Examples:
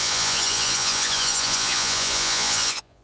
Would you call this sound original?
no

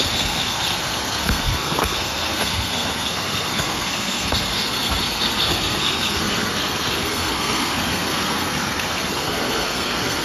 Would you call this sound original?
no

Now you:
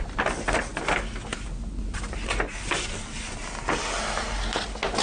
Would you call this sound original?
yes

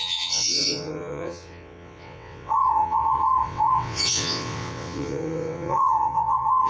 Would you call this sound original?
no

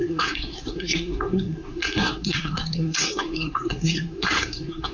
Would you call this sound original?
no